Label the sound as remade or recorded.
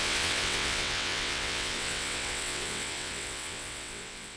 remade